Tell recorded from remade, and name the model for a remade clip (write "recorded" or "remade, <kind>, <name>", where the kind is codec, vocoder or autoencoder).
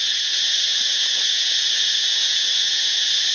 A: remade, vocoder, Vocos